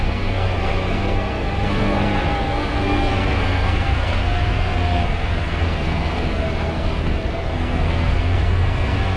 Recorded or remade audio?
remade